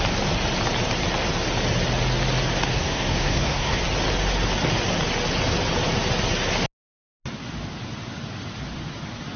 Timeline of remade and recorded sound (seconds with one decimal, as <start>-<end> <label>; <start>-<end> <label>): 0.0-2.7 recorded; 2.7-3.8 remade; 3.8-9.4 recorded